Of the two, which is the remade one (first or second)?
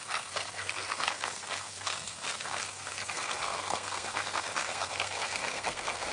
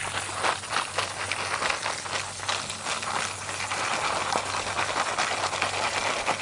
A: first